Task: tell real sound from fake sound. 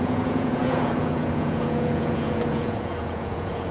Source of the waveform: fake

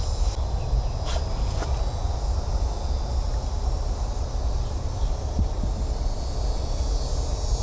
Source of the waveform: real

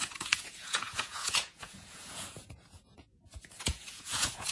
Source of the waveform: fake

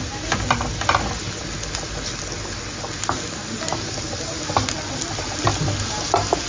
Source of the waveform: real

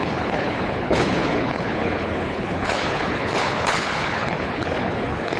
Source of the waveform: fake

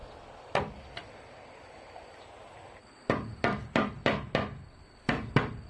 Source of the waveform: real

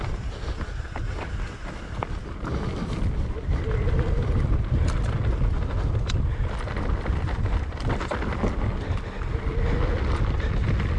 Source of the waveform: real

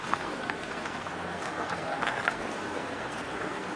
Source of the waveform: fake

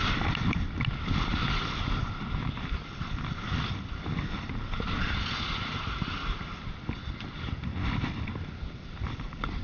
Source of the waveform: real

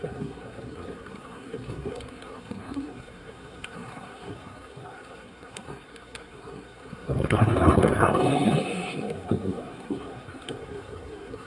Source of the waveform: fake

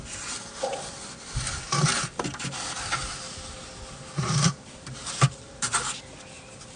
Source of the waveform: real